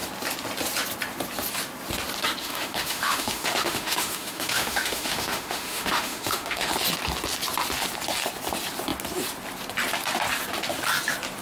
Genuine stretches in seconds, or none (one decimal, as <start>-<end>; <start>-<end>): 0.0-2.4; 6.7-11.4